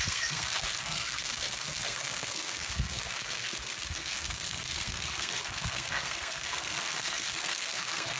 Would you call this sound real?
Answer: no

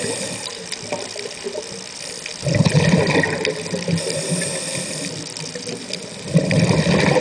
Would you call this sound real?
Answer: yes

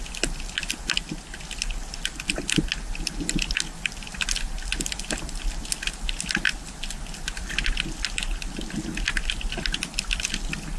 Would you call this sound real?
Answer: yes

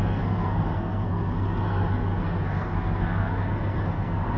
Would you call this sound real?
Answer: no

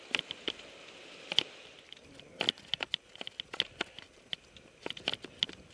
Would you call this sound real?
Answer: yes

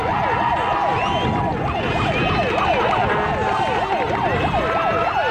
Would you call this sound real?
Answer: yes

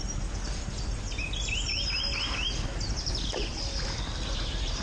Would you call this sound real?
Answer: yes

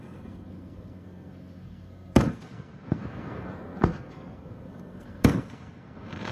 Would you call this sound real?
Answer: no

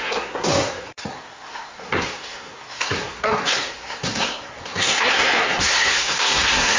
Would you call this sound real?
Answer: no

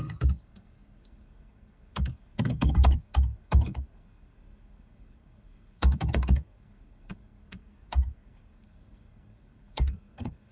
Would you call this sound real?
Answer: no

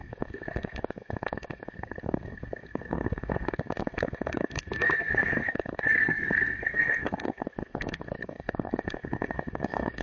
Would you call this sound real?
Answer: no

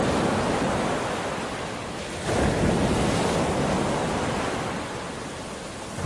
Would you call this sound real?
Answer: yes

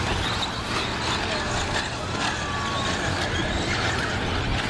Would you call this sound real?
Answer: yes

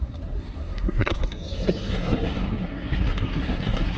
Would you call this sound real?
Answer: no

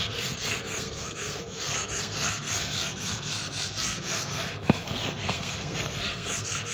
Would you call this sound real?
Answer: no